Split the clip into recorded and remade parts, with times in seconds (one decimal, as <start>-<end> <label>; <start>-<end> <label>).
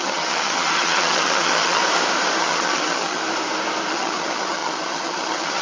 0.0-1.8 remade; 1.8-2.4 recorded; 2.4-3.2 remade; 3.2-3.9 recorded; 3.9-5.6 remade